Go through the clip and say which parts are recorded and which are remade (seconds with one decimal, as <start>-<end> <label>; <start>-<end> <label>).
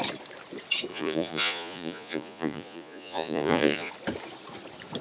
0.0-0.9 recorded; 0.9-3.9 remade; 3.9-5.0 recorded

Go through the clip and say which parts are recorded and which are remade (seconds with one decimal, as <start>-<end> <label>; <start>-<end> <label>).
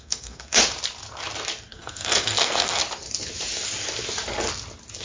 0.0-0.6 remade; 0.6-1.7 recorded; 1.7-2.8 remade; 2.8-5.0 recorded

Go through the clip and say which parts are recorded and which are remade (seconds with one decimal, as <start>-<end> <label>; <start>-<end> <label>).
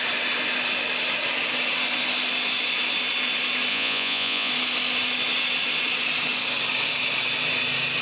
0.0-3.7 recorded; 3.7-4.5 remade; 4.5-8.0 recorded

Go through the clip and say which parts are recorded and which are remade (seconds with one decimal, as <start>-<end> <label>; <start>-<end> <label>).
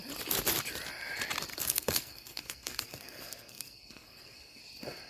0.0-1.5 recorded; 1.5-4.6 remade; 4.6-5.1 recorded